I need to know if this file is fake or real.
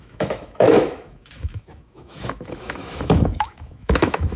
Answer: fake